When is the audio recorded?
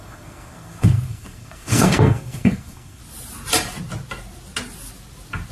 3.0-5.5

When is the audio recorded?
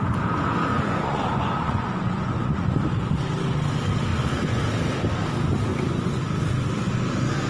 0.0-0.7; 2.8-4.1; 4.6-5.7; 6.2-7.5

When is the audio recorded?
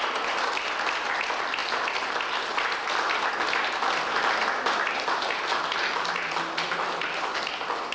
0.0-7.9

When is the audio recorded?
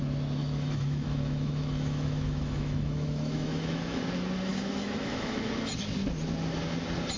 0.0-0.4; 4.0-4.5; 5.5-7.2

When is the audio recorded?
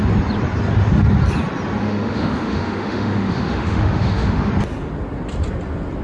0.0-1.8; 4.5-6.0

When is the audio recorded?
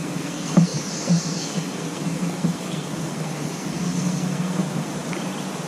4.9-5.7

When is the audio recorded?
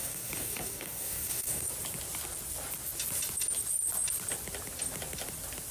1.7-5.7